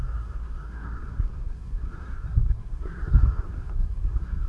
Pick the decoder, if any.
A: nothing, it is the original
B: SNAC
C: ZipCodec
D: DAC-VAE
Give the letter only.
B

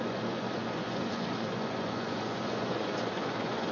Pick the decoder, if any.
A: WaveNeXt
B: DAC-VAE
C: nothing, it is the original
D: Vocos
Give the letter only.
D